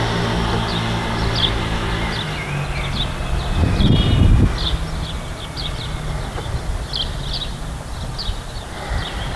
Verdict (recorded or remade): recorded